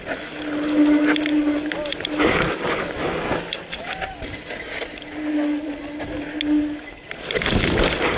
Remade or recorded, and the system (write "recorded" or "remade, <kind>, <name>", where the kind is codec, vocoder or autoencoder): recorded